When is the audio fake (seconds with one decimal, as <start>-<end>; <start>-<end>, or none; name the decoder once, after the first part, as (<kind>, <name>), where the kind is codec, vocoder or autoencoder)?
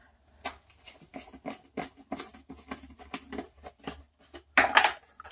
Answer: none